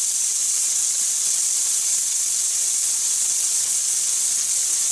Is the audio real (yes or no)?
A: no